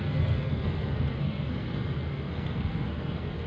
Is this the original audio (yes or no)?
no